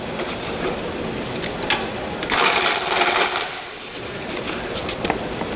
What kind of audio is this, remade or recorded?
recorded